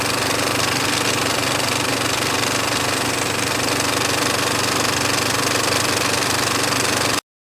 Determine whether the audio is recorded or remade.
recorded